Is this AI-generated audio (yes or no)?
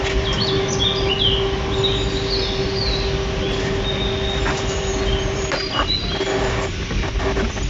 no